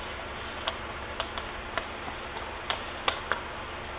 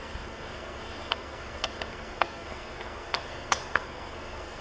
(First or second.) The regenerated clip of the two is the second